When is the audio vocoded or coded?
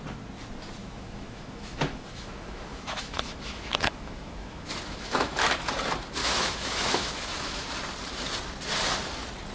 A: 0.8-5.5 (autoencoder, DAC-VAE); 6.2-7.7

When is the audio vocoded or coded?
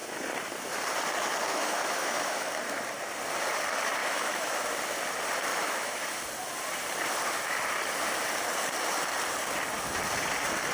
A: 1.5-2.5 (autoencoder, DAC-VAE); 4.0-4.6; 5.5-6.2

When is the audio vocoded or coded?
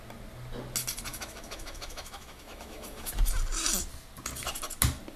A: 1.1-3.1 (autoencoder, DAC-VAE)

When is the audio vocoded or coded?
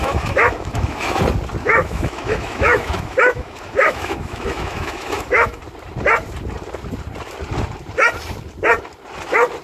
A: 0.0-1.2 (autoencoder, DAC-VAE); 1.6-5.6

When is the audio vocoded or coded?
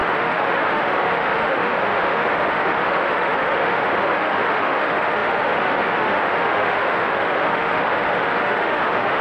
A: 0.0-9.2 (autoencoder, DAC-VAE)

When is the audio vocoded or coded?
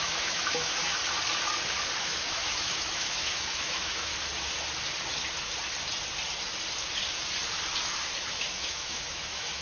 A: 0.0-1.0 (autoencoder, DAC-VAE); 2.0-4.1; 8.3-9.6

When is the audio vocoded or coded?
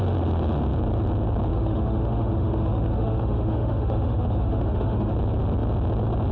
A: 1.5-5.1 (autoencoder, DAC-VAE)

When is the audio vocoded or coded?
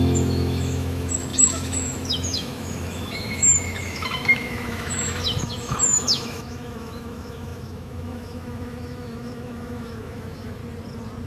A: 0.0-10.6 (autoencoder, DAC-VAE)